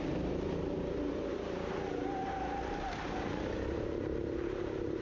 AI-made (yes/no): yes